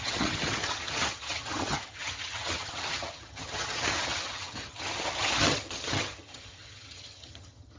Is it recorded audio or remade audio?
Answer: remade